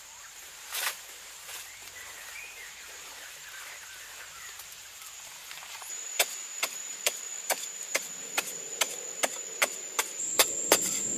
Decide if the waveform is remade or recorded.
remade